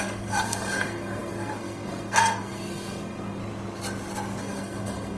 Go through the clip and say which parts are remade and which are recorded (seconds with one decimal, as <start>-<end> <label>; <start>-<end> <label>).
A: 0.0-3.4 remade; 3.4-4.4 recorded; 4.4-5.2 remade